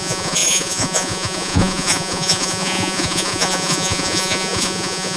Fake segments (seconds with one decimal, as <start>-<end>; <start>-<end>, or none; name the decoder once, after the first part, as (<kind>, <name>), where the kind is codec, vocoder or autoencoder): 0.0-5.2 (vocoder, Vocos)